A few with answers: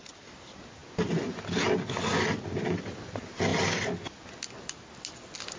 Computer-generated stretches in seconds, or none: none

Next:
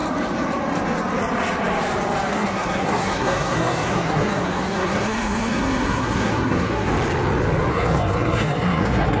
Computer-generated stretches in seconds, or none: 2.3-6.9 (codec, SNAC); 7.7-9.2

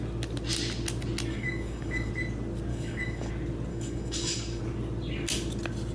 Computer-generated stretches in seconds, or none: 1.3-2.1 (codec, DAC); 2.7-3.3; 3.7-4.6